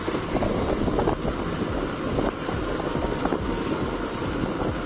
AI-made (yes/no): no